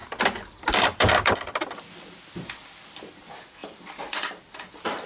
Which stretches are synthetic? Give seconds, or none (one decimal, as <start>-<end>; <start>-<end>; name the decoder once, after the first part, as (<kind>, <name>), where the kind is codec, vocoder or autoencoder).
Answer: 0.0-3.1 (vocoder, BigVGAN v2); 3.6-4.5